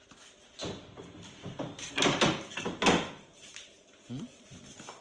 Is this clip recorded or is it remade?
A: recorded